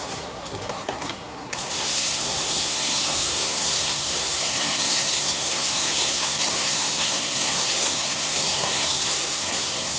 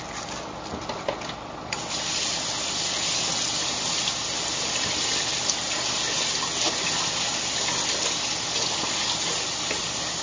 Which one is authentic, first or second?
second